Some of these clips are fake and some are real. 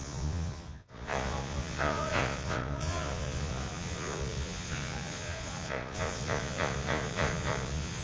fake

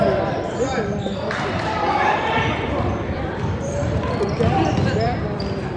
fake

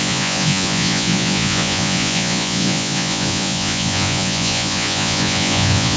fake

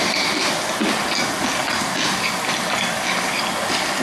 real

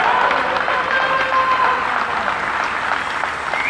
real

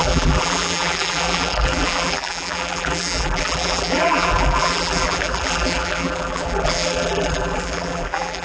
fake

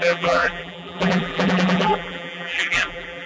fake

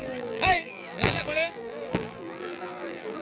fake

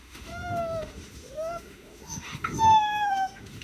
fake